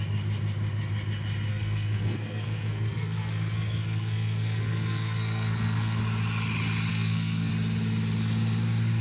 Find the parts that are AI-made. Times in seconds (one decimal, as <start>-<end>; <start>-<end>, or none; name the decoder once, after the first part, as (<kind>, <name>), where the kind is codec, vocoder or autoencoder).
1.5-6.0 (codec, SNAC); 6.9-7.5